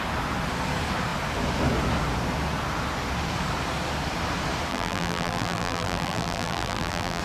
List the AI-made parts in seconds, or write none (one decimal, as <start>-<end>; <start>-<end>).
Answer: 4.7-7.2